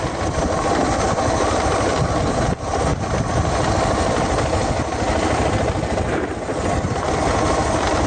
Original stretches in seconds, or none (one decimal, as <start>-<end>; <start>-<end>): 0.0-8.1